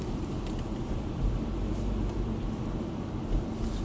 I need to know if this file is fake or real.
fake